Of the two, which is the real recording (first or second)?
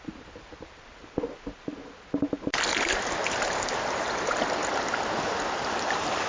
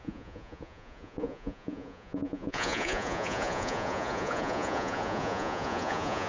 first